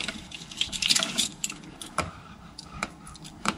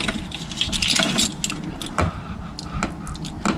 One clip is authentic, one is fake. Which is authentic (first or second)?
second